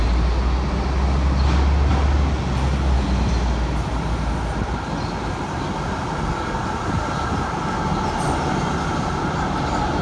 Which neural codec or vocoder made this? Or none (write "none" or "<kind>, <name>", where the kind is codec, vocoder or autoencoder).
none